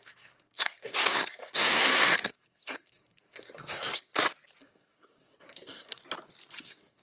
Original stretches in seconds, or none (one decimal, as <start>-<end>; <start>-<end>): 4.1-4.6; 6.0-6.6